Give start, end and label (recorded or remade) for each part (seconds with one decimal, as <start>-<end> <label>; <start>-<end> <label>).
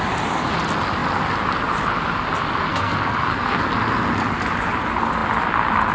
0.0-2.7 recorded; 2.7-3.6 remade; 3.6-5.9 recorded